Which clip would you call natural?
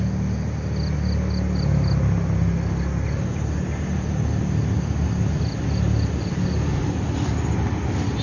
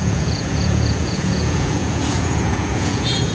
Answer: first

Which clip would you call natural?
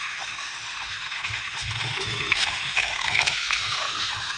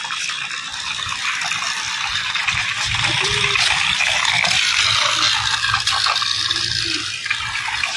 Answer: second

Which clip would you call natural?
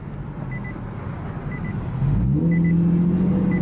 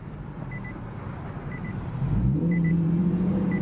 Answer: first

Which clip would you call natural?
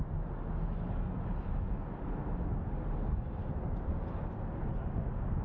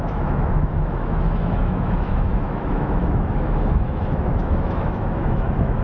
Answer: first